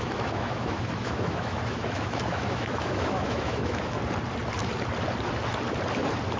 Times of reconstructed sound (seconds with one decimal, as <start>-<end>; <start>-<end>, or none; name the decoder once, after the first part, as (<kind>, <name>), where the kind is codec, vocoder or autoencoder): 0.0-4.0 (autoencoder, DAC-VAE)